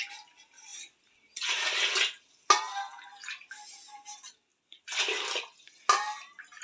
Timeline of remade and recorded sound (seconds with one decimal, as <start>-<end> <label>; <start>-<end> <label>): 0.0-6.6 recorded